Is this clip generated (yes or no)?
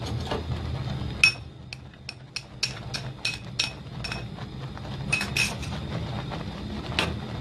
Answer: no